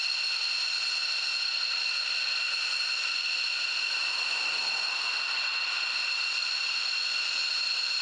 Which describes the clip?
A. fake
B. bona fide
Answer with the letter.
B